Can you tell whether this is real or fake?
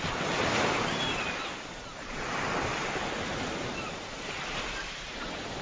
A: real